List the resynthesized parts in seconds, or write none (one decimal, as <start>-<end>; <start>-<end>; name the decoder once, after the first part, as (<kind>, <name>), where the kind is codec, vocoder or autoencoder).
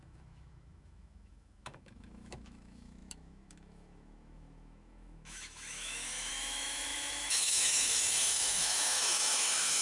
0.0-9.8 (autoencoder, DAC-VAE)